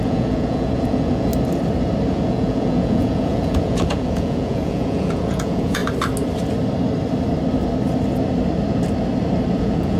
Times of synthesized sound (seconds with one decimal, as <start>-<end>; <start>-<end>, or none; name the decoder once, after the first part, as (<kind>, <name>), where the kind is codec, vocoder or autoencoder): 0.0-1.3 (vocoder, Vocos); 2.1-5.8; 9.6-10.0